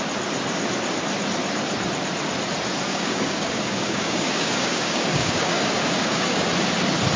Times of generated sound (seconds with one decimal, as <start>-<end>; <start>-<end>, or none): 2.9-6.5